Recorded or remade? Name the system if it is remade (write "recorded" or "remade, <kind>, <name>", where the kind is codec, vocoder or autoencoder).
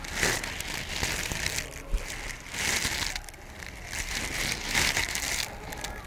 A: recorded